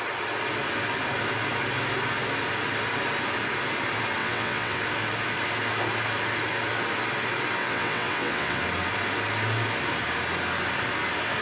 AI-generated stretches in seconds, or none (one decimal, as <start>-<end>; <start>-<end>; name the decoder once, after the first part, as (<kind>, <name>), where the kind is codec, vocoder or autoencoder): 4.2-4.8 (vocoder, WaveNeXt); 7.6-8.6